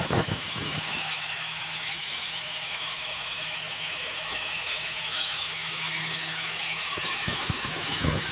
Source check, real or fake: fake